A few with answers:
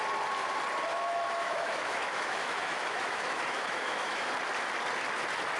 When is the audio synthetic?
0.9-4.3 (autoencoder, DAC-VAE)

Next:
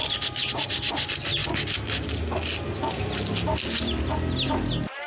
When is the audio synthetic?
none

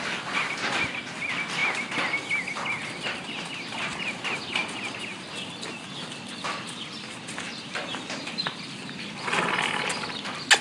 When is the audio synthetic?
none